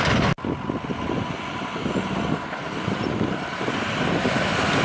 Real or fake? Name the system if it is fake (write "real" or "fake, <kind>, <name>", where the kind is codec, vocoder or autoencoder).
real